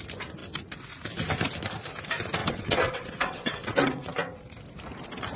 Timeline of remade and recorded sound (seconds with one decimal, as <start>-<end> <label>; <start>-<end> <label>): 0.0-2.4 recorded; 2.4-4.1 remade; 4.1-5.4 recorded